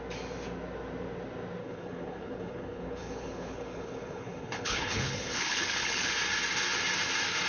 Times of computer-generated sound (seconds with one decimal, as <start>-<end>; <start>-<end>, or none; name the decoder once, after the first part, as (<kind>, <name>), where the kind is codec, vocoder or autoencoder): 1.6-6.1 (codec, HILCodec)